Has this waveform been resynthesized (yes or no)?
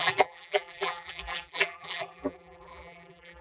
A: yes